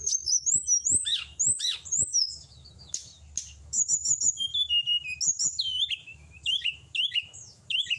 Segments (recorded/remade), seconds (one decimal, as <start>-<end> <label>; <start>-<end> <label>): 0.0-3.1 remade; 3.1-3.6 recorded; 3.6-4.5 remade; 4.5-5.9 recorded; 5.9-8.0 remade